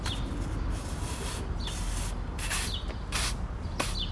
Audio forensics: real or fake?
real